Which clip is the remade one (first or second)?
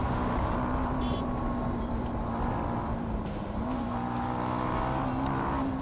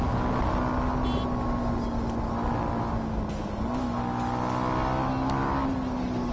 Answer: first